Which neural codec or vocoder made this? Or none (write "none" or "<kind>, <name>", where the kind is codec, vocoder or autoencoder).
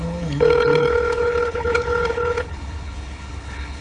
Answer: codec, HILCodec